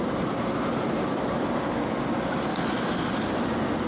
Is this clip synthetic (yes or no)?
no